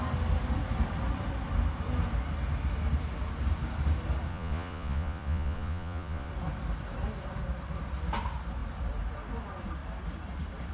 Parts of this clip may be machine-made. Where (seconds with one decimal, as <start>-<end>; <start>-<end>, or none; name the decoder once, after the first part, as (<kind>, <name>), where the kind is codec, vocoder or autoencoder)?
4.3-6.3 (vocoder, Vocos)